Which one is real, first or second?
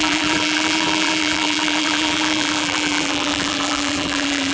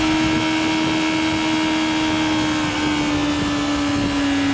second